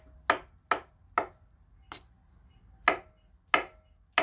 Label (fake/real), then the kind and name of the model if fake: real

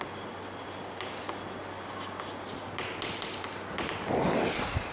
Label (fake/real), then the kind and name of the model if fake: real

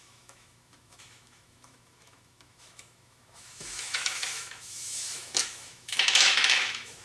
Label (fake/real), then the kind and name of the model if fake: fake, autoencoder, DAC-VAE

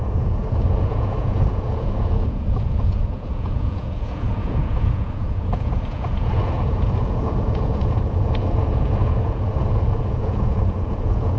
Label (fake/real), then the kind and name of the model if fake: fake, vocoder, Vocos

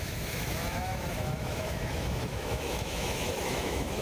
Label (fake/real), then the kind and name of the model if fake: fake, autoencoder, DAC-VAE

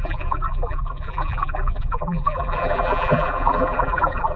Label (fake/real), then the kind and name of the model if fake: fake, vocoder, BigVGAN v2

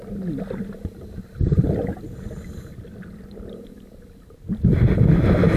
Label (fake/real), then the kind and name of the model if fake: real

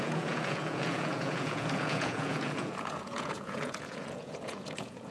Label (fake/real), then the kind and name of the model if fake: fake, vocoder, Vocos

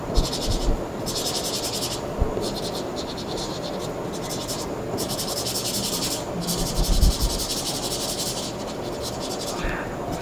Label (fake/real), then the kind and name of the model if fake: real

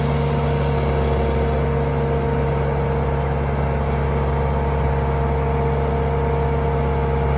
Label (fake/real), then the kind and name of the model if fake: real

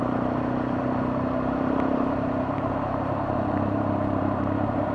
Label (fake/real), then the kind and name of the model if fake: fake, vocoder, BigVGAN v2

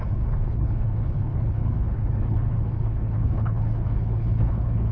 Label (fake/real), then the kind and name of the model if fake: fake, codec, HILCodec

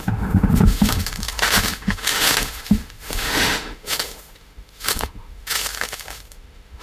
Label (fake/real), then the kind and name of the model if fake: fake, autoencoder, DAC-VAE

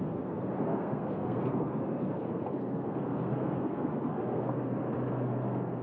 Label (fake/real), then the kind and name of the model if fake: fake, codec, SNAC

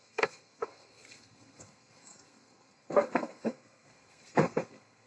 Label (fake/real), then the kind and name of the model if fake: fake, codec, SNAC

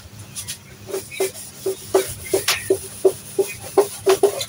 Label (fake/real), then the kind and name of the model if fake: fake, vocoder, BigVGAN v2